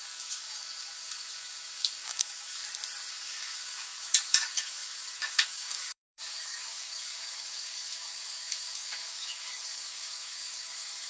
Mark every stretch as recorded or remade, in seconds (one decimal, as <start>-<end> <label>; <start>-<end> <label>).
0.0-2.6 remade; 2.6-3.1 recorded; 3.1-11.1 remade